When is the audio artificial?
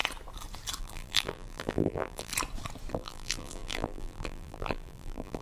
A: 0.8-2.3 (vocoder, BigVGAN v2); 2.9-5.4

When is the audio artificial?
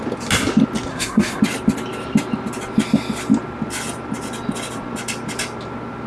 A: 0.9-1.4 (codec, SNAC)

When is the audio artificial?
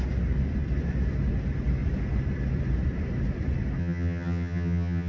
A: 3.8-5.1 (vocoder, HiFi-GAN)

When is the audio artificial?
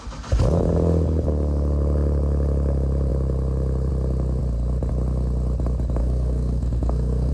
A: 6.0-7.3 (codec, SNAC)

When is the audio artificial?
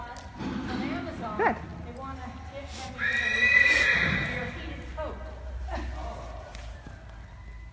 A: none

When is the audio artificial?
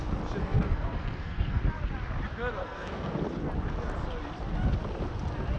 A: 0.4-1.6 (codec, SNAC); 2.6-3.2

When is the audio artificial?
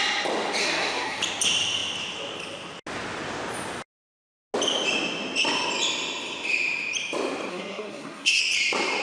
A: 0.6-1.2 (codec, SNAC); 7.5-8.4